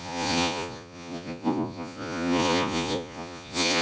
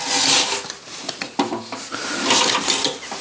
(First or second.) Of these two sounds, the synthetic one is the first